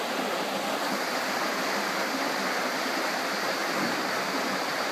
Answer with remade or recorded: recorded